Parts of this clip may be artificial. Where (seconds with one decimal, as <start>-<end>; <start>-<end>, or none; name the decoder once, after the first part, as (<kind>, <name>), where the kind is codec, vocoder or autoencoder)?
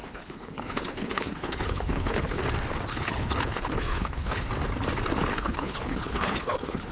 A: 0.0-2.4 (codec, HILCodec); 2.9-4.5; 5.3-6.9